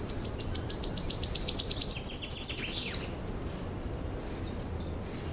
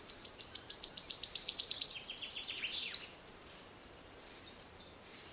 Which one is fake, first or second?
second